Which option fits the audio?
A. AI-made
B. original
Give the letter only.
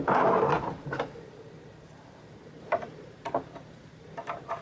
A